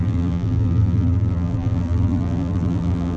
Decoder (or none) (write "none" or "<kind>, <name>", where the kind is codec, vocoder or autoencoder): vocoder, BigVGAN v2